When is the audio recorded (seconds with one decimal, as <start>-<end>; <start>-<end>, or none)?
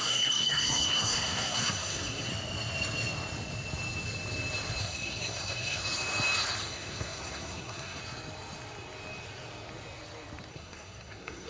2.3-4.8; 5.8-6.6; 8.0-10.5